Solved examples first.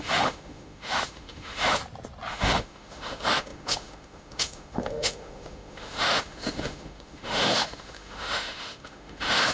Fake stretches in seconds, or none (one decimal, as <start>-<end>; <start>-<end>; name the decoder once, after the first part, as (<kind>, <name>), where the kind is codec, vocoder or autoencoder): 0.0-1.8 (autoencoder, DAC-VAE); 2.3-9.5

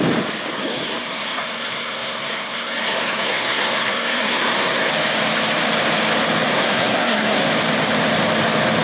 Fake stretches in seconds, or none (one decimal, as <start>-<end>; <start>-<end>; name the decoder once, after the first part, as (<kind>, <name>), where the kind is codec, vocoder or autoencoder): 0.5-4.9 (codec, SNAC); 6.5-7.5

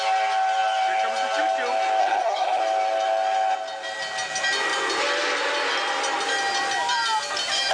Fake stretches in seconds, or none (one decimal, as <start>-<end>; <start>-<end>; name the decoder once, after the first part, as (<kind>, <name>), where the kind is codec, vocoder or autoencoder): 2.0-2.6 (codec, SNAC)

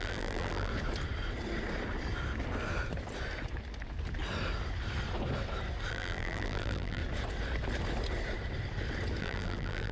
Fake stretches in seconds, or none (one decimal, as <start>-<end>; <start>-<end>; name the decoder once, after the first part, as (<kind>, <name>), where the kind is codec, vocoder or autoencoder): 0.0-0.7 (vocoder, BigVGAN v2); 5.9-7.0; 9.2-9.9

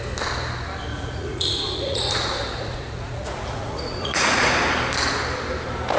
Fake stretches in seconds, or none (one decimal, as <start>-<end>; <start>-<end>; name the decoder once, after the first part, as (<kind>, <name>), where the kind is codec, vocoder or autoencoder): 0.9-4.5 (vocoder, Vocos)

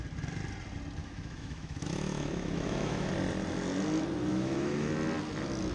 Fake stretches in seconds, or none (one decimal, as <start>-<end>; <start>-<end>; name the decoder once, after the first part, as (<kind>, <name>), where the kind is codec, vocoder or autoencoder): 1.0-3.1 (autoencoder, DAC-VAE); 4.3-4.9

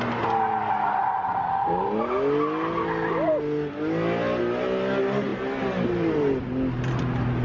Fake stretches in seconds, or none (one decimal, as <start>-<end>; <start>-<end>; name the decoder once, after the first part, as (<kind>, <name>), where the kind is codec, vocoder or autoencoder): none

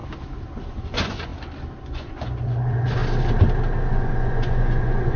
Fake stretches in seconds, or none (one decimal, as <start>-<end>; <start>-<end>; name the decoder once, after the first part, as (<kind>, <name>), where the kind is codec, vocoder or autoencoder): 0.8-1.3 (vocoder, Vocos); 1.8-3.0; 3.9-5.2